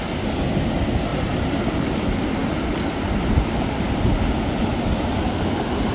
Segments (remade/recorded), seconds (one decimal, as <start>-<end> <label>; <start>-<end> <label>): 0.0-1.1 recorded; 1.1-1.7 remade; 1.7-5.9 recorded